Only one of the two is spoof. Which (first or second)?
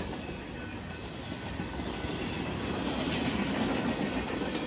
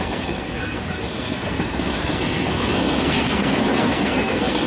second